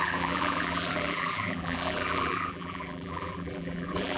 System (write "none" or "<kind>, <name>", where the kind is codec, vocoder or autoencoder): vocoder, BigVGAN v2